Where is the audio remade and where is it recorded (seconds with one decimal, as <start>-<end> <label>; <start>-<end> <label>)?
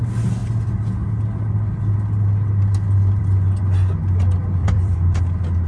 0.0-4.6 recorded; 4.6-5.2 remade; 5.2-5.7 recorded